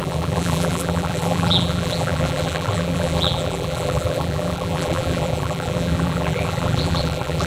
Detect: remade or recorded remade